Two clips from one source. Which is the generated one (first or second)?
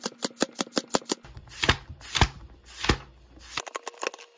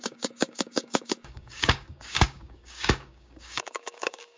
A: second